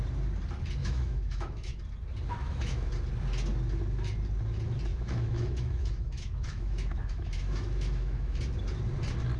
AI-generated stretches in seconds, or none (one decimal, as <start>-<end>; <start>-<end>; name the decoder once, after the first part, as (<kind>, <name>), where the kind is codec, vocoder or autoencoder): 0.8-1.8 (autoencoder, DAC-VAE); 2.4-2.9; 4.9-8.4